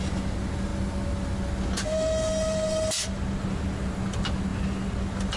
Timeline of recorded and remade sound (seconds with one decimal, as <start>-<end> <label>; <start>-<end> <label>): 0.0-5.4 recorded